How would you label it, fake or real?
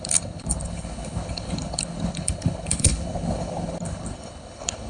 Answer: fake